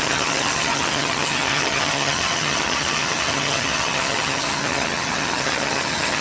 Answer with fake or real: fake